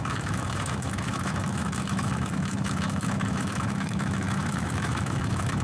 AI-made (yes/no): yes